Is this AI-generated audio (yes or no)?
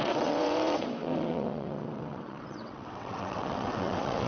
yes